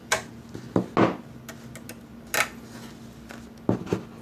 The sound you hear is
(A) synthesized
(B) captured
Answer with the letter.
B